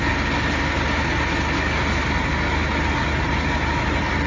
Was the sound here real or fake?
real